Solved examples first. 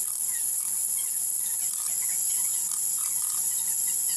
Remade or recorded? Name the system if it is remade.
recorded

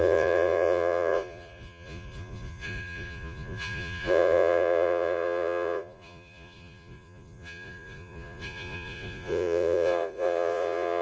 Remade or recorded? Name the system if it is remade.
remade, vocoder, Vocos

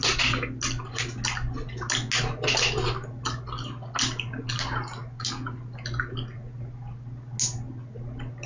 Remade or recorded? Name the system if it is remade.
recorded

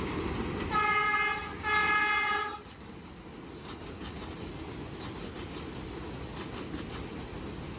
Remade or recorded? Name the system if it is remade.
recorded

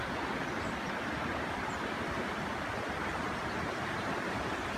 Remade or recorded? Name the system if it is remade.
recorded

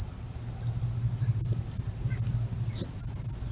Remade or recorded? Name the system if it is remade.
recorded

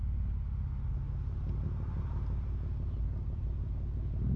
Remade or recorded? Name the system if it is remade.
recorded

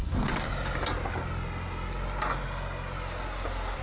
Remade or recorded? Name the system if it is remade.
recorded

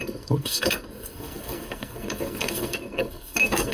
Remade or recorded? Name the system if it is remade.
remade, codec, SNAC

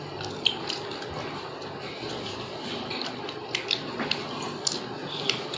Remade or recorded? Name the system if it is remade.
recorded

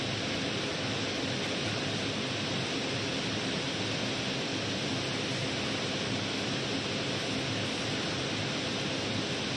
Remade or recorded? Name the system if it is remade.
recorded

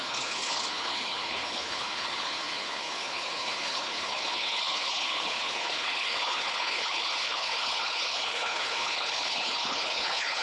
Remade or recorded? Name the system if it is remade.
remade, codec, HILCodec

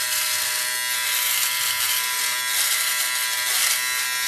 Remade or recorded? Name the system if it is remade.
recorded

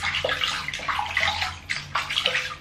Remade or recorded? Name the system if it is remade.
recorded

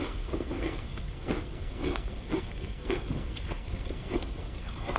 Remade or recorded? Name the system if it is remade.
remade, codec, SNAC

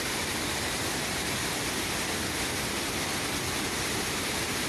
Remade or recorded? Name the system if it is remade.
recorded